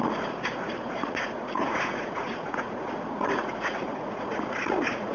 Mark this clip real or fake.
fake